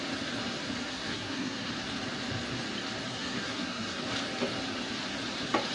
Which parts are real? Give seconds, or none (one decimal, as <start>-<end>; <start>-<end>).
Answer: 0.0-0.9; 1.7-3.1; 4.0-5.7